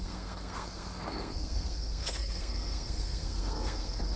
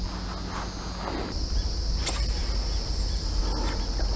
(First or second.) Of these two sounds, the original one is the second